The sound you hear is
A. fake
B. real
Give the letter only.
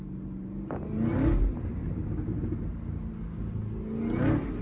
B